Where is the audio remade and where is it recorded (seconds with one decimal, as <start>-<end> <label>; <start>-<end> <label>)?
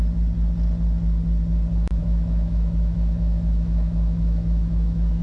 0.0-2.0 recorded; 2.0-5.2 remade